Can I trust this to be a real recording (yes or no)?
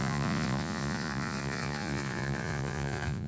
no